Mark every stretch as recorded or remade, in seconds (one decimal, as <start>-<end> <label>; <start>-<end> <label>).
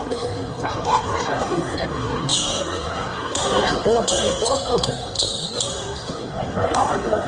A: 0.0-7.3 remade